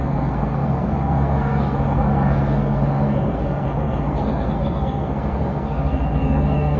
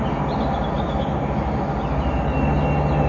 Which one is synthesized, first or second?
first